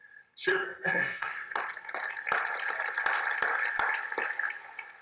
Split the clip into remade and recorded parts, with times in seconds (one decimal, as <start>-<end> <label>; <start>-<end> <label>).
0.0-0.5 recorded; 0.5-1.3 remade; 1.3-5.0 recorded